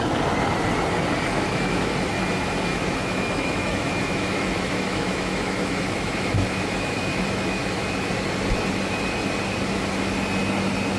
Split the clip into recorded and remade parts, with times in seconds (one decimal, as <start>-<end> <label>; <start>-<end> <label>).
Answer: 0.0-1.3 recorded; 1.3-1.9 remade; 1.9-2.7 recorded; 2.7-7.8 remade; 7.8-11.0 recorded